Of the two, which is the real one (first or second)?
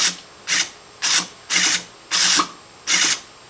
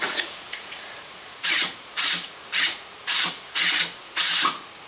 first